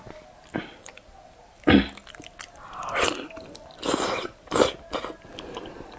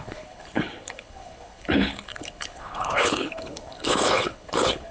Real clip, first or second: first